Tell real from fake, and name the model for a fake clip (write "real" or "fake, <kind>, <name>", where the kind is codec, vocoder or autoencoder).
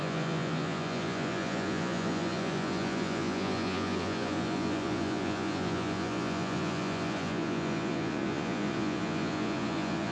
fake, vocoder, Vocos